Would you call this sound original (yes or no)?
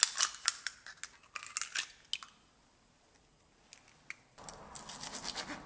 yes